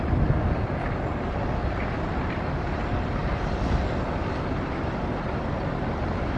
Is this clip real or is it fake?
real